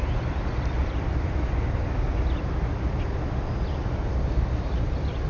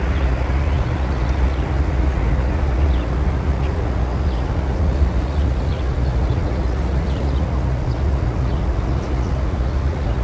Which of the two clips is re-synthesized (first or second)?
second